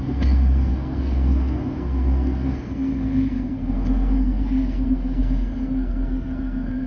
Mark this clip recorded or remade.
remade